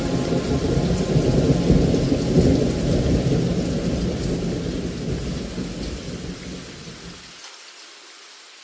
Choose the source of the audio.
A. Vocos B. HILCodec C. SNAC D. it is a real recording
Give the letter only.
D